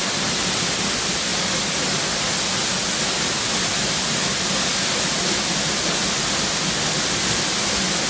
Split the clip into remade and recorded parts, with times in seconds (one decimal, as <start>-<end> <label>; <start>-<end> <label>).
0.0-8.1 recorded